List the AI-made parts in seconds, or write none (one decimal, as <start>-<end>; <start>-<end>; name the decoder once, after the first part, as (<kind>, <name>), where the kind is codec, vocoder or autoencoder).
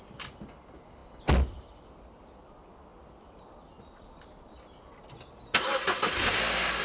none